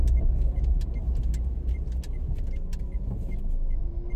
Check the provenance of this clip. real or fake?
real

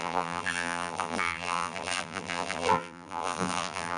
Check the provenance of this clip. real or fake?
fake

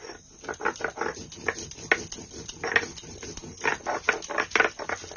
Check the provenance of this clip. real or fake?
real